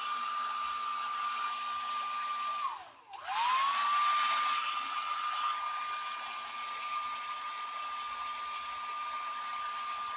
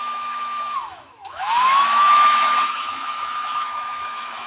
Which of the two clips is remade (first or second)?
second